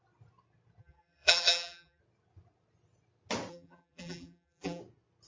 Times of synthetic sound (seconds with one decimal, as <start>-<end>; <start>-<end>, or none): 0.8-2.0; 3.5-4.8